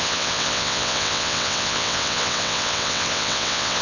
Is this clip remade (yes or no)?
yes